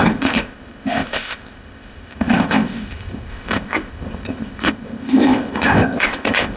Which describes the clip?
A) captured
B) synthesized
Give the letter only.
B